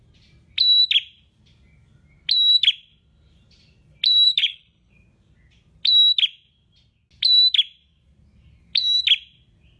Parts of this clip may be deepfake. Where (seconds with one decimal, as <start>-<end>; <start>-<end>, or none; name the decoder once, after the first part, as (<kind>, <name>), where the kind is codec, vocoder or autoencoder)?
4.4-4.9 (codec, HILCodec)